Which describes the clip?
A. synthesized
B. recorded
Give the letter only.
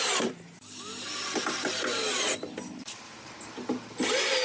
B